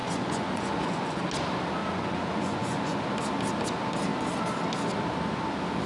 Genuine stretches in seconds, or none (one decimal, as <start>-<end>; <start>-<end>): 1.2-1.8; 3.0-5.9